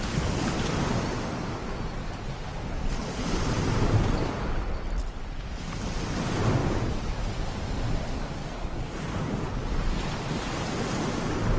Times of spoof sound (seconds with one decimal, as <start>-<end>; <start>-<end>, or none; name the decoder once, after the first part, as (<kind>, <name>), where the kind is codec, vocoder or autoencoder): 8.4-8.9 (codec, SNAC)